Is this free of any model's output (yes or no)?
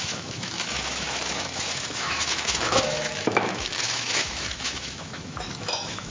no